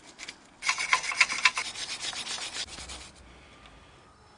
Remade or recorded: recorded